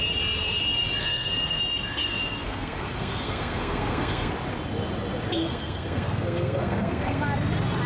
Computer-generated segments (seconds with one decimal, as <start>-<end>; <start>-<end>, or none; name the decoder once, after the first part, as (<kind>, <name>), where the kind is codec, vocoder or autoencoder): 1.0-1.6 (codec, SNAC); 2.0-4.3; 5.4-7.2